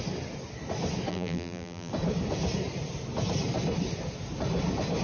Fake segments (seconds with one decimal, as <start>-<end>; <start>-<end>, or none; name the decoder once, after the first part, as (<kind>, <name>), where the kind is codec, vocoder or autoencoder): 1.1-1.9 (vocoder, BigVGAN v2)